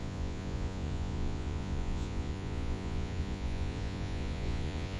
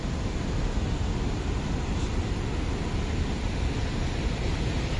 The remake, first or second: first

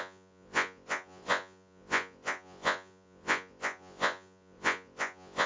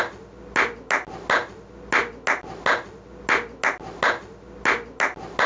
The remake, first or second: first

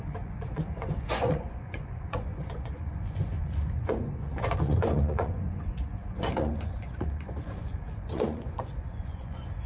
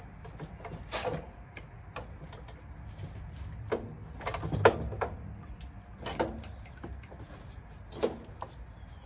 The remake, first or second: first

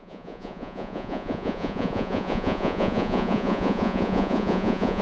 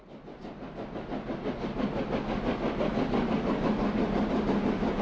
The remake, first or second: first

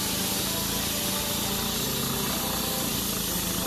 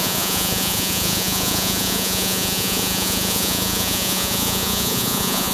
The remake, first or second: second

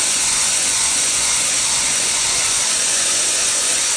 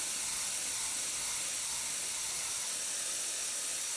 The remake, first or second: first